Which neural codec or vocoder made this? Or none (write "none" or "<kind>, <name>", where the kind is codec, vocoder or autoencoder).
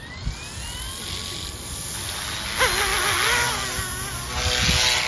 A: none